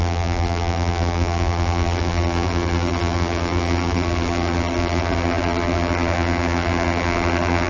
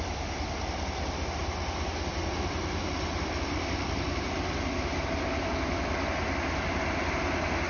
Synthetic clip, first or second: first